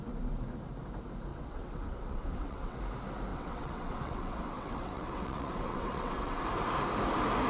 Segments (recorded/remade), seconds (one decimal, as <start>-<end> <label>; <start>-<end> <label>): 0.0-1.3 recorded; 1.3-2.8 remade; 2.8-3.3 recorded; 3.3-6.4 remade; 6.4-7.5 recorded